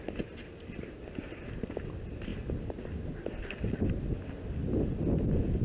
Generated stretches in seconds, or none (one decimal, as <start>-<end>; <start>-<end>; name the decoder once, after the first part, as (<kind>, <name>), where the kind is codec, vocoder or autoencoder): none